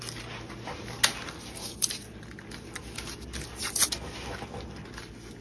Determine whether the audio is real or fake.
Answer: real